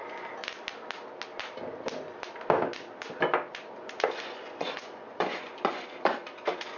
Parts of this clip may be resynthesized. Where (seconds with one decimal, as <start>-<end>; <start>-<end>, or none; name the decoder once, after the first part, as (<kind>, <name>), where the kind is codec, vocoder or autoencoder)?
4.1-6.8 (vocoder, Vocos)